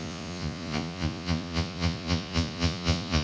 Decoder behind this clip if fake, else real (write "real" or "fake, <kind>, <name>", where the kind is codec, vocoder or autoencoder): fake, vocoder, Vocos